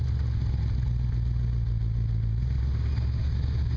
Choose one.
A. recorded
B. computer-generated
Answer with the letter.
A